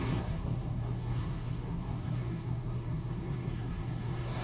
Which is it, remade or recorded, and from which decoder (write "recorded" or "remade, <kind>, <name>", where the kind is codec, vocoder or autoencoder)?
remade, codec, SNAC